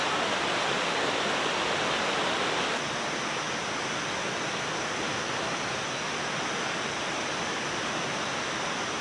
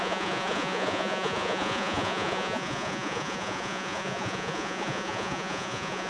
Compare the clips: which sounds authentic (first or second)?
first